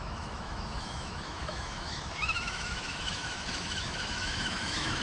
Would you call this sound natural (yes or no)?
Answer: no